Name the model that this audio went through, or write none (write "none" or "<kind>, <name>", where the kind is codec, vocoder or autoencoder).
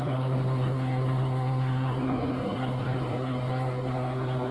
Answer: codec, SNAC